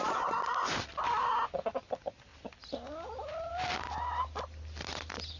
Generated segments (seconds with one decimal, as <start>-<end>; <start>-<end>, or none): none